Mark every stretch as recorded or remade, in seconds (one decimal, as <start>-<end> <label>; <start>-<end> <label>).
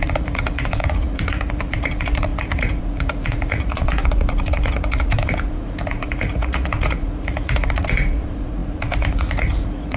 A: 0.0-10.0 remade